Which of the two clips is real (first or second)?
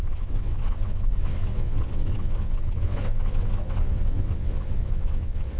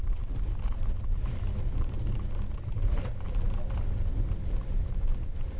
second